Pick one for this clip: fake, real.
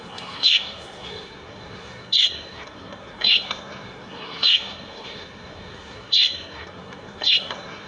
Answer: fake